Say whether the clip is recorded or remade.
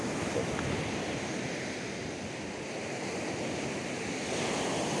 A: recorded